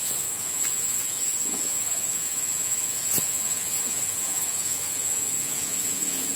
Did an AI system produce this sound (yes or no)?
yes